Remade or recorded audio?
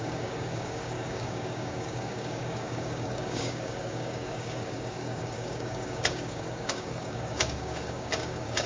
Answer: remade